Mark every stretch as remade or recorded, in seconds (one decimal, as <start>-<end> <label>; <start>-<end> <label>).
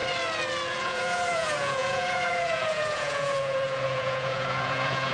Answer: 0.0-0.8 recorded; 0.8-5.1 remade